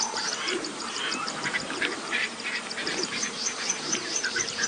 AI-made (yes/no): yes